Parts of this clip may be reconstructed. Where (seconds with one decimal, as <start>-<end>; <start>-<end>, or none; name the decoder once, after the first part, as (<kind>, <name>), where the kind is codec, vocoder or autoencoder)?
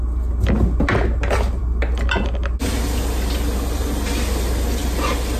none